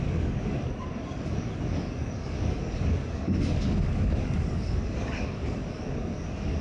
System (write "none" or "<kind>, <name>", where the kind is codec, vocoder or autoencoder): codec, DAC